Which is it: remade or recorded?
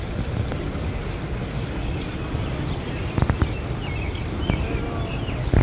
recorded